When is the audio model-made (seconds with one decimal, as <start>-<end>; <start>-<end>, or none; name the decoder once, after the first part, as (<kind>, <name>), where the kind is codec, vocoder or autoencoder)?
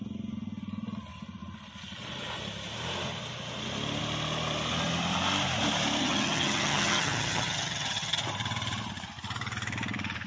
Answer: 6.0-8.2 (vocoder, HiFi-GAN)